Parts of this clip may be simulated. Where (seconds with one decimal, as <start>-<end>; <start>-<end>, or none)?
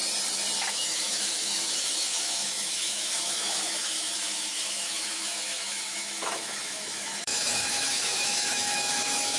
0.7-9.4